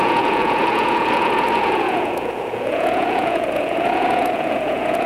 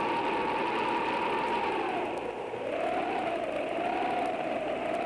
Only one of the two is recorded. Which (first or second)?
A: second